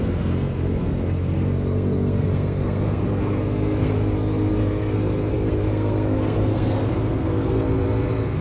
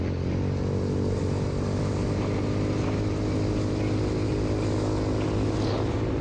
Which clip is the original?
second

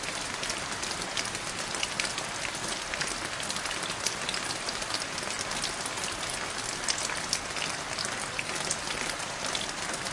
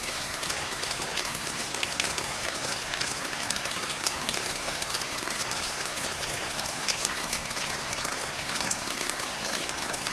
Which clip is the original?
first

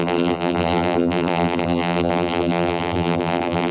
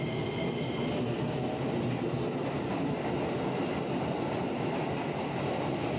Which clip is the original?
second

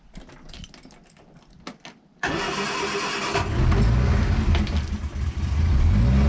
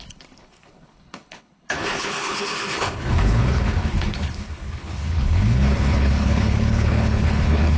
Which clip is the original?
first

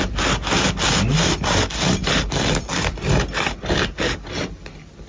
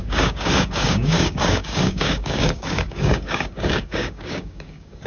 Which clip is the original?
first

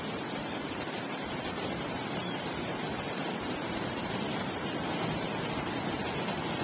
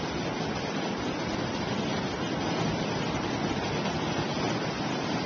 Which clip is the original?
second